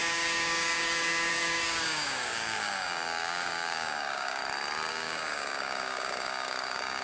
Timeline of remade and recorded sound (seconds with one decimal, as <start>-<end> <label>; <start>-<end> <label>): 0.0-4.4 remade; 4.4-4.9 recorded; 4.9-7.0 remade